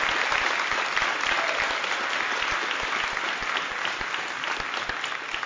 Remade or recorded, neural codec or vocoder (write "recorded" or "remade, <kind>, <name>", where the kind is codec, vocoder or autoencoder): recorded